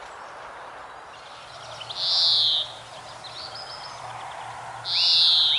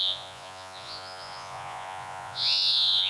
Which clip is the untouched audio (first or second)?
first